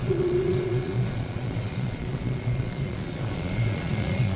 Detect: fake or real fake